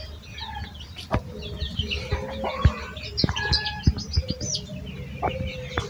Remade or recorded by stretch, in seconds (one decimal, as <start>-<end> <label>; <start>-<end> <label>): 0.0-5.9 recorded